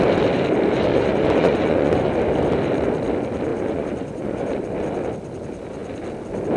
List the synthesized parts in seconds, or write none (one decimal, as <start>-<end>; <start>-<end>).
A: 0.9-2.1; 3.5-4.6